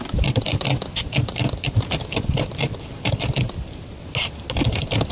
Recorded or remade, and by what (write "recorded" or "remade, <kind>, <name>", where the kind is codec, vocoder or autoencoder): recorded